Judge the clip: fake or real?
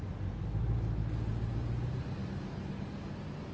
real